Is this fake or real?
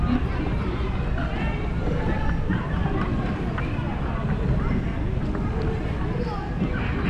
real